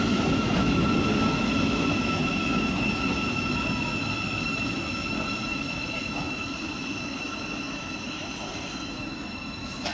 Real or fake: fake